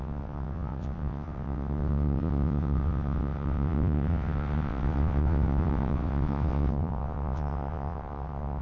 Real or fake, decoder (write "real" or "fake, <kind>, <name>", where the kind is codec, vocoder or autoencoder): fake, vocoder, WaveNeXt